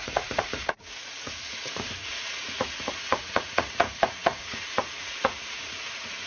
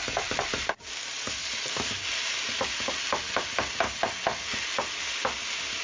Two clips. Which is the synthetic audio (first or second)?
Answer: first